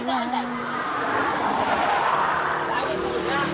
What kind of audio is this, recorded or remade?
recorded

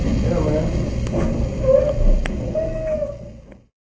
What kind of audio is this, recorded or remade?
recorded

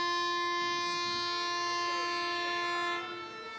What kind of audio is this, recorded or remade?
recorded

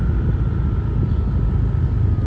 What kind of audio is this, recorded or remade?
recorded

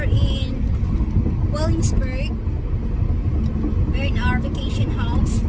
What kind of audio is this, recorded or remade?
recorded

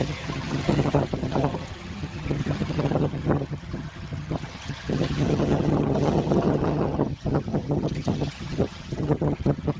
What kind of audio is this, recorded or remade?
remade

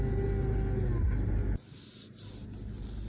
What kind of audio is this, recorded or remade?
recorded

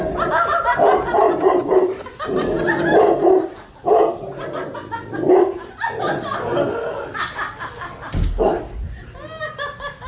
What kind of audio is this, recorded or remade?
recorded